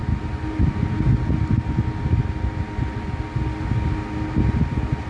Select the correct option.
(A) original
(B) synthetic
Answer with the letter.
A